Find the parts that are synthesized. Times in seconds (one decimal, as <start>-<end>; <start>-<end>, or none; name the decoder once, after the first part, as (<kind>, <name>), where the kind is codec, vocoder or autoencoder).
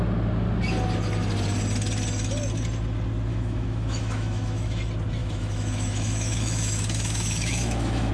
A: 3.3-4.8 (autoencoder, DAC-VAE); 5.2-8.1